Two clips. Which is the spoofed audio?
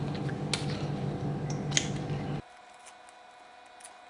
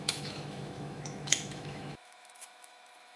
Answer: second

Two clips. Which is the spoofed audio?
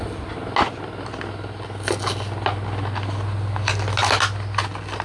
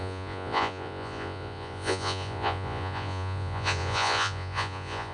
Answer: second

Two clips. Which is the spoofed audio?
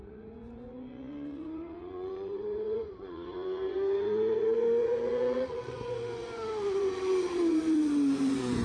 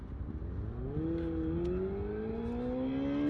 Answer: first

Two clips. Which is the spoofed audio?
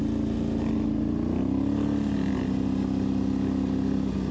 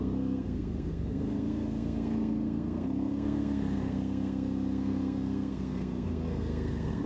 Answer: second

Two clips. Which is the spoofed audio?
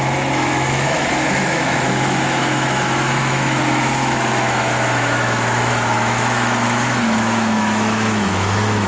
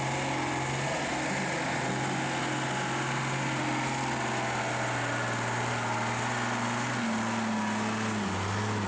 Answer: first